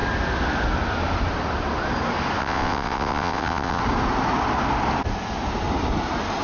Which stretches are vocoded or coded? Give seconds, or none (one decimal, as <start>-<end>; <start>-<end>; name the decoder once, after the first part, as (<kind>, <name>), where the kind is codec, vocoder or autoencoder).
2.4-3.8 (vocoder, WaveNeXt)